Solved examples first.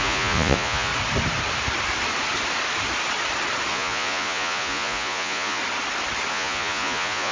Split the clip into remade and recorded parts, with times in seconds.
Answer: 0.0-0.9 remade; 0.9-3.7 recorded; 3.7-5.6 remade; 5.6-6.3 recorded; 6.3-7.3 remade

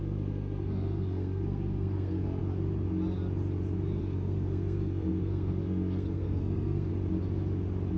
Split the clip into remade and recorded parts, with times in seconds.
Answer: 0.0-2.4 remade; 2.4-4.0 recorded; 4.0-6.9 remade; 6.9-8.0 recorded

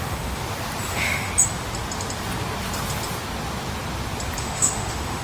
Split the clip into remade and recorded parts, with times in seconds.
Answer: 0.0-0.4 remade; 0.4-0.9 recorded; 0.9-1.3 remade; 1.3-4.4 recorded; 4.4-5.2 remade

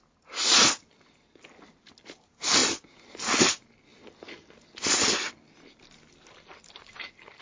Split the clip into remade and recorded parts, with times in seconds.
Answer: 0.0-7.4 recorded

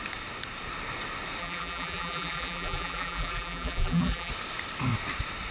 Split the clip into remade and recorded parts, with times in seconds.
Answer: 0.0-1.4 recorded; 1.4-4.3 remade; 4.3-5.5 recorded

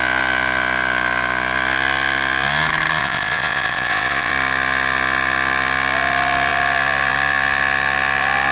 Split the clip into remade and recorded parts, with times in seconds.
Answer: 0.0-3.0 recorded; 3.0-4.3 remade; 4.3-8.5 recorded

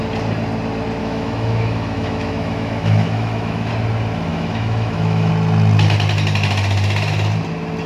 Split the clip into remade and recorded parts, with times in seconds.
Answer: 0.0-1.0 recorded; 1.0-3.7 remade; 3.7-4.3 recorded; 4.3-5.3 remade; 5.3-7.9 recorded

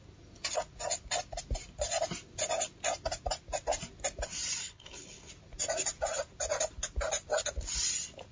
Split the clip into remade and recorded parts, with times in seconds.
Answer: 0.0-4.6 recorded; 4.6-5.3 remade; 5.3-8.3 recorded